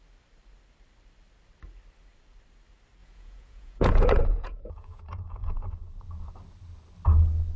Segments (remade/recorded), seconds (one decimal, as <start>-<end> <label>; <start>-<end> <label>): 0.0-3.0 recorded; 3.0-6.3 remade; 6.3-7.6 recorded